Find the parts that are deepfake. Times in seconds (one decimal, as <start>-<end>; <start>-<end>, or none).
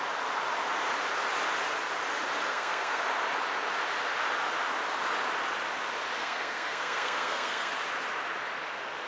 2.5-3.0; 6.2-7.7